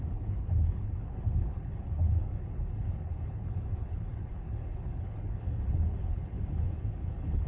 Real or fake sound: fake